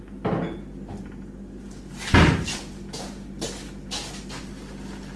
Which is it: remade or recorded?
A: recorded